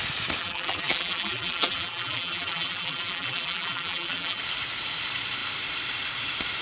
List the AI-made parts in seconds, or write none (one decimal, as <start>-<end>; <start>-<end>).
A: 0.4-4.4